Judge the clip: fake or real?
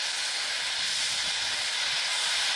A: real